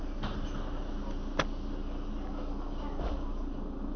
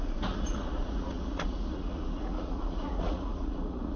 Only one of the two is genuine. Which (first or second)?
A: first